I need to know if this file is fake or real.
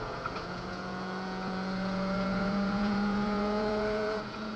fake